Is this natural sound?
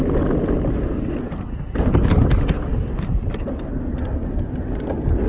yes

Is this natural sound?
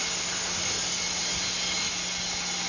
yes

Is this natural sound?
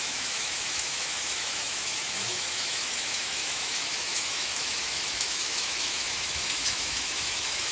no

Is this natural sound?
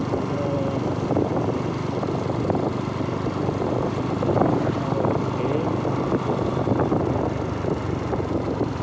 yes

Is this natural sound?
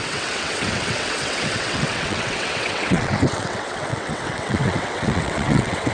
no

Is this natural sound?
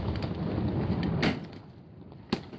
yes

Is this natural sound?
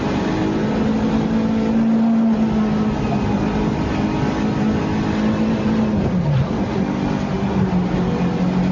yes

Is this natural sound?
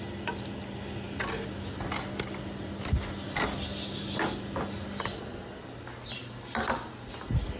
yes